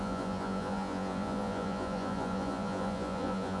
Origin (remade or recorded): remade